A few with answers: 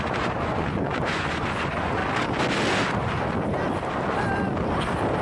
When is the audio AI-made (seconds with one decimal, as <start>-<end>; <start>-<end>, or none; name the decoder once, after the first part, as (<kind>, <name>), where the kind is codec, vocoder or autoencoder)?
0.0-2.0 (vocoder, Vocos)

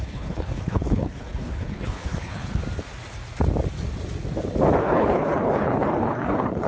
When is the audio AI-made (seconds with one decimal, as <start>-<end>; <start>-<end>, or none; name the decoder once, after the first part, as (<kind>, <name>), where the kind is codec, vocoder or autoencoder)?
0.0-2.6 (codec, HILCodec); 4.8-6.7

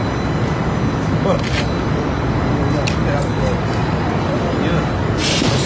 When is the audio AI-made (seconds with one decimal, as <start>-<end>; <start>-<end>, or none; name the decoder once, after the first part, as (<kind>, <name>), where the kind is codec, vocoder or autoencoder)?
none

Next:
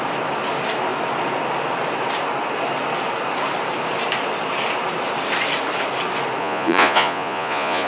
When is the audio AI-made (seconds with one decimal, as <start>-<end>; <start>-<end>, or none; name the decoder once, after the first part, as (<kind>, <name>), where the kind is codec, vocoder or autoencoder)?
6.4-7.9 (vocoder, Vocos)

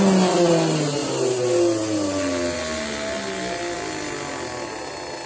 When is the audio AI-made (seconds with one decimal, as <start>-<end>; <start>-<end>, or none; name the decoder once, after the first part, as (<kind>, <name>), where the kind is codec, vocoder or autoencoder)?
none